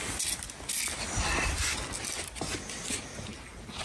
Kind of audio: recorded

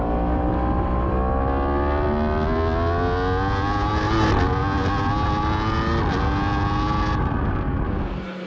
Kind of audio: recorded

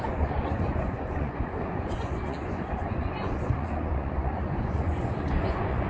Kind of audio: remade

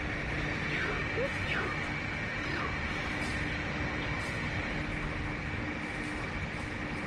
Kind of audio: recorded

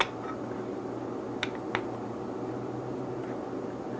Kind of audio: recorded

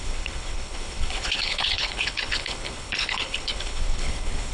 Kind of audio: remade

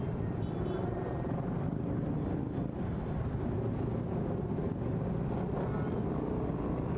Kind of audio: recorded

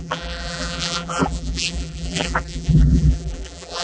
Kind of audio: remade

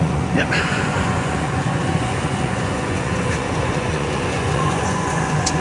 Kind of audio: remade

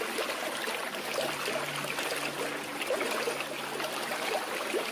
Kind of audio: recorded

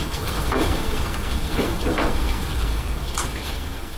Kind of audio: remade